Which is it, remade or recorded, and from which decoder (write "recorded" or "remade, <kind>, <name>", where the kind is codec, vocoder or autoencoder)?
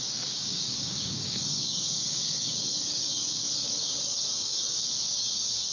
remade, codec, DAC